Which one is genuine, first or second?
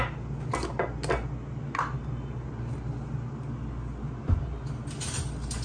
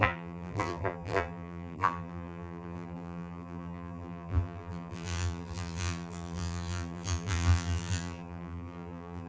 first